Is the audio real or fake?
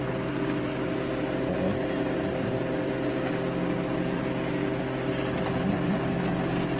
real